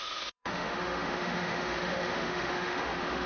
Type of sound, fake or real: fake